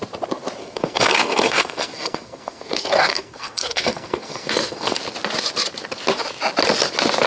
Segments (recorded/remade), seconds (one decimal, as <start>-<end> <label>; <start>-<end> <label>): 0.0-0.6 recorded; 0.6-5.0 remade; 5.0-7.3 recorded